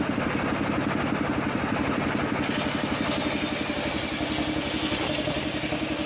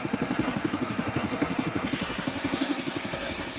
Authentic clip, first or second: first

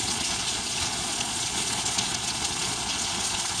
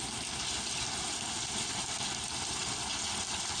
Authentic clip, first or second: second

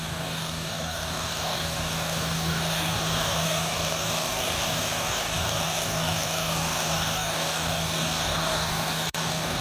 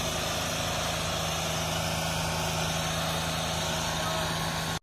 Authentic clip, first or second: second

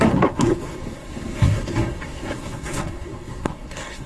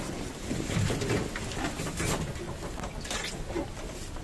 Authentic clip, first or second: second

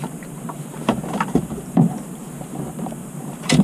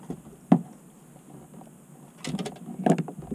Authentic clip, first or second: second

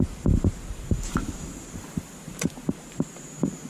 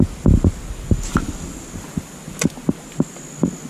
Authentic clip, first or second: second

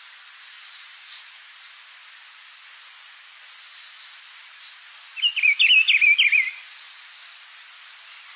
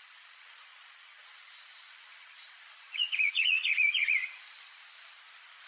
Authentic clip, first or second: first